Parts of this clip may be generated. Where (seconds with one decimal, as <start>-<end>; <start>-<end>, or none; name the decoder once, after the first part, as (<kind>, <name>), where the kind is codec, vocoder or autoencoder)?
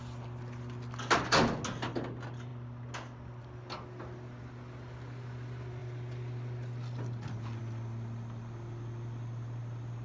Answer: none